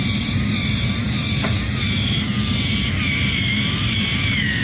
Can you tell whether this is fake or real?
fake